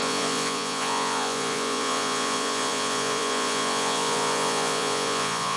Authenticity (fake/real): fake